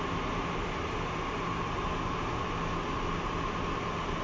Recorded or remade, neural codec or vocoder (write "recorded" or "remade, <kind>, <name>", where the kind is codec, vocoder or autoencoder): recorded